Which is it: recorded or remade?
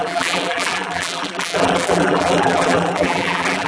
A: remade